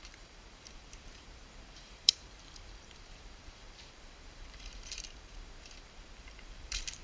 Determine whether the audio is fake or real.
fake